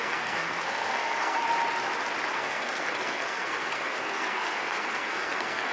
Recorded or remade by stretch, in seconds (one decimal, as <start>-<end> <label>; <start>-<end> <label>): 0.0-1.4 remade; 1.4-2.3 recorded; 2.3-5.7 remade